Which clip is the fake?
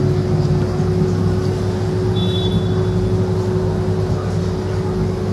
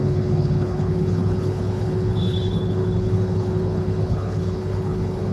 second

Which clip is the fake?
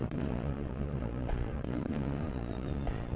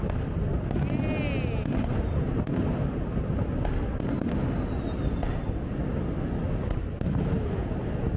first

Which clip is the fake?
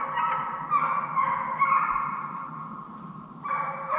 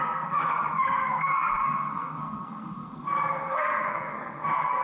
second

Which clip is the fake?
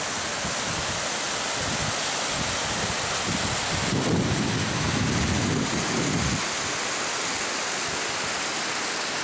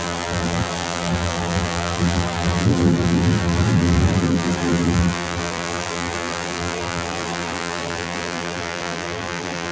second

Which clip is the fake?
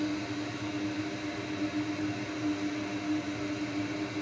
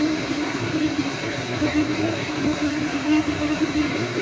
second